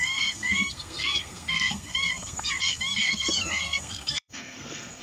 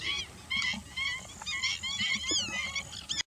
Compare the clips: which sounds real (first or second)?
second